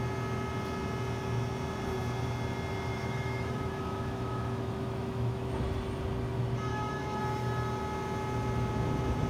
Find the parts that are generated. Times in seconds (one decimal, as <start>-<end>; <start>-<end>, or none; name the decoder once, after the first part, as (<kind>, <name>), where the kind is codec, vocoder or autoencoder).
2.9-5.5 (autoencoder, DAC-VAE); 6.7-7.2